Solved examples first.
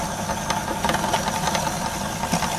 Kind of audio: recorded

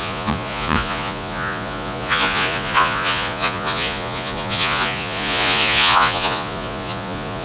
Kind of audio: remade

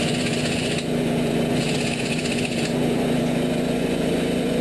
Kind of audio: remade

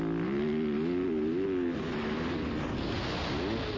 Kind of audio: recorded